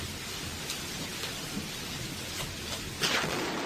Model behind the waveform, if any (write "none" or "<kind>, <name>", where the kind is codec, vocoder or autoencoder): none